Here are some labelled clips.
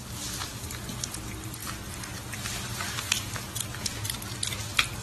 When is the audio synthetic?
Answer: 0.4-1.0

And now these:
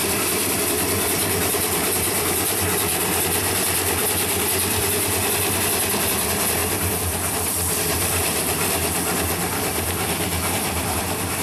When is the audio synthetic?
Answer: 0.0-11.4

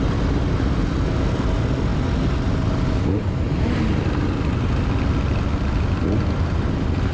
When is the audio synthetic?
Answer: none

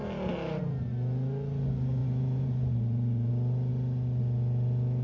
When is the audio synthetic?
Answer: 2.0-3.3

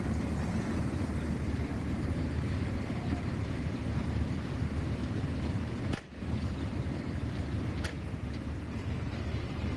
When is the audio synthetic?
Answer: 1.7-4.0; 5.0-9.8